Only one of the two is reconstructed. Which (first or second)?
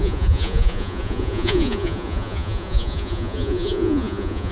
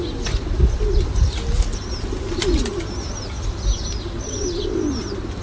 first